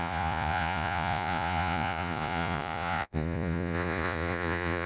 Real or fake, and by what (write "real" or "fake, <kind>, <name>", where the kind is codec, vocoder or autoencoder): fake, vocoder, Vocos